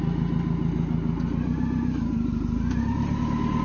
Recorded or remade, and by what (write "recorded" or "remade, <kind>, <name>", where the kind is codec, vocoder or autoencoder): recorded